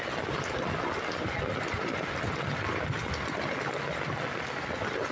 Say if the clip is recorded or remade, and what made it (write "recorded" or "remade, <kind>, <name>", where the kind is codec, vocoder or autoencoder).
recorded